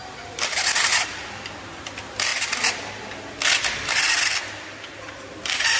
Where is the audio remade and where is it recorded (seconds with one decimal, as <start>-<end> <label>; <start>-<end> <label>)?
0.0-5.8 recorded